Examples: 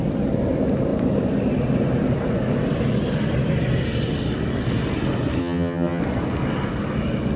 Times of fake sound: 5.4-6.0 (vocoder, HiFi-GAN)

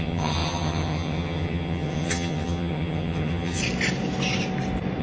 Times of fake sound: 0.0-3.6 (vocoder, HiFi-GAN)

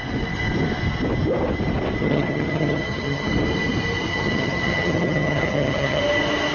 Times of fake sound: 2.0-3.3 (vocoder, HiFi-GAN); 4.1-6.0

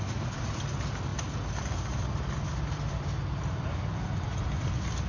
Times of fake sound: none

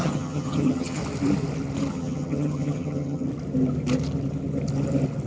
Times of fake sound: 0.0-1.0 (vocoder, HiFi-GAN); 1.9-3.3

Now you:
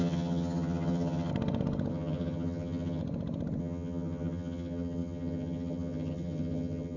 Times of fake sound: 0.0-1.3 (vocoder, HiFi-GAN); 1.9-3.0; 3.6-7.0